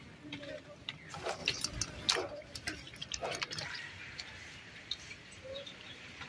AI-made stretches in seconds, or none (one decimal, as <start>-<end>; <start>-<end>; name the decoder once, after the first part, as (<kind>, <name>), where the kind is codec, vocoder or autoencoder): 3.0-6.3 (vocoder, BigVGAN v2)